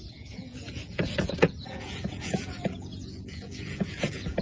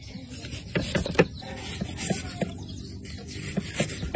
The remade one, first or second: first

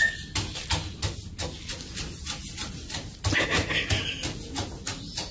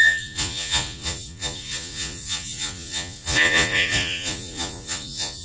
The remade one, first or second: second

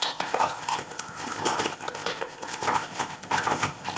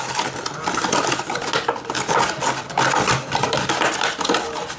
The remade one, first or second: first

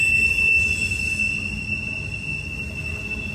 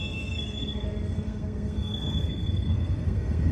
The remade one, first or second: second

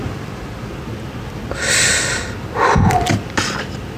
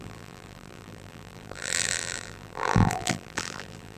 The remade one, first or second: second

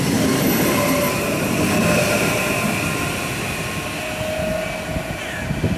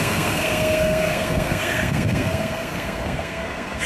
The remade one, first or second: second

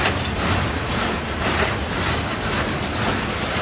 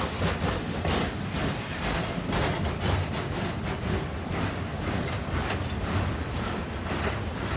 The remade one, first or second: second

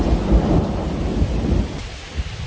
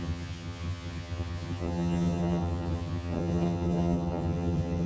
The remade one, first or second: second